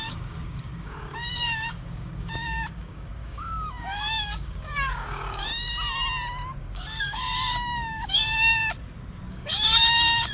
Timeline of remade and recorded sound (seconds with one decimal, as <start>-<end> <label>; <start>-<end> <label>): 0.0-5.5 remade; 5.5-6.6 recorded; 6.6-8.6 remade; 8.6-9.3 recorded; 9.3-10.3 remade